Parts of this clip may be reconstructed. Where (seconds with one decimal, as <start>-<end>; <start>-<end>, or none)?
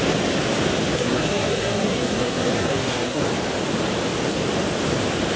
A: 0.9-3.2